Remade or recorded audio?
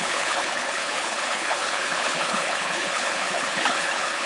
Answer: remade